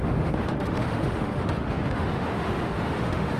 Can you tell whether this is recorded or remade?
remade